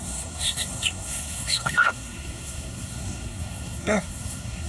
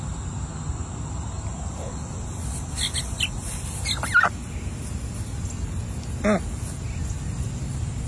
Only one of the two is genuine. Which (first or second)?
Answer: second